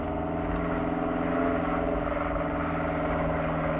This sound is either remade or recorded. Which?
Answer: recorded